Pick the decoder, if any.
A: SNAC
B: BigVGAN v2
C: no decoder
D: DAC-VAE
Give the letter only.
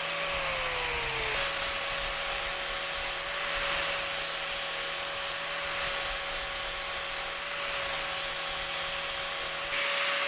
C